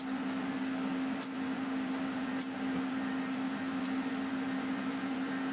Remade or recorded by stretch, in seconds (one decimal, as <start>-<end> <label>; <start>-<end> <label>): 0.0-5.5 recorded